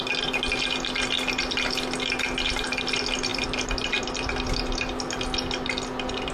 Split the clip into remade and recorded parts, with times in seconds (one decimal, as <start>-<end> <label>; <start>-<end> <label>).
0.0-3.3 recorded; 3.3-4.3 remade; 4.3-6.3 recorded